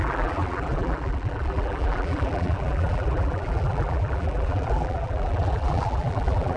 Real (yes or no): no